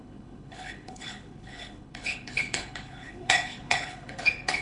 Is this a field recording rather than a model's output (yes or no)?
no